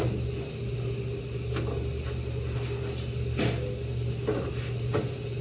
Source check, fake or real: real